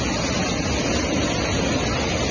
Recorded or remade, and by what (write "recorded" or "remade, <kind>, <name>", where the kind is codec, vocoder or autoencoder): recorded